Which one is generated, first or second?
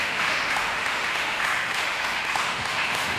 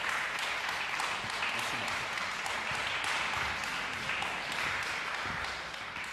first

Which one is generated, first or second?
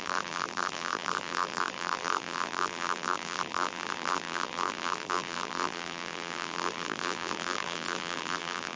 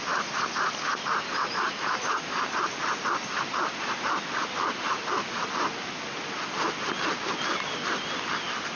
first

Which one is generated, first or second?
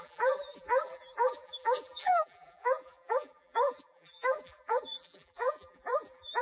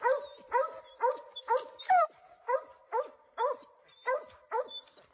first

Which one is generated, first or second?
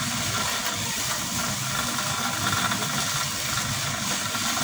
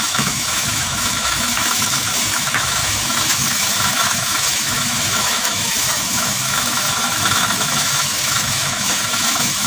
second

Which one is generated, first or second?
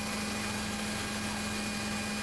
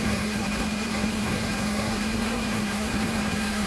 second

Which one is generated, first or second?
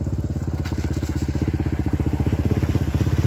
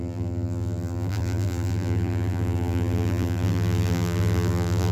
second